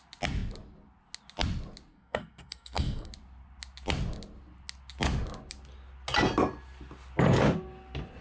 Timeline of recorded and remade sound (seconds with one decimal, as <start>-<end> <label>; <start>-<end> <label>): 0.0-1.9 recorded; 1.9-3.1 remade; 3.1-8.2 recorded